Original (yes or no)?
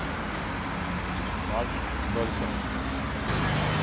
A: yes